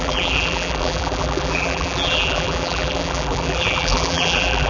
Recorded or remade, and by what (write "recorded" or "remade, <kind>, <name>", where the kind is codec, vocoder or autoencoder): remade, vocoder, BigVGAN v2